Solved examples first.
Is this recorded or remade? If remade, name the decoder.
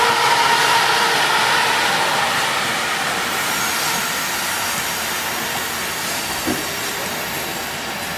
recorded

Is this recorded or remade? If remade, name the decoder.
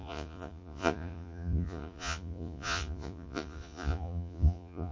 remade, vocoder, Vocos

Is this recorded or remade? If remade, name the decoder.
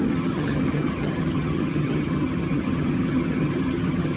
remade, vocoder, HiFi-GAN